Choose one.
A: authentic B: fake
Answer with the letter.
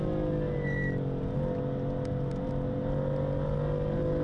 A